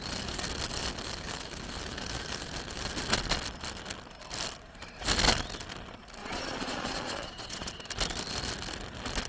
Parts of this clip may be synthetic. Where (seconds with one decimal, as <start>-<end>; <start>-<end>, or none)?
6.2-7.7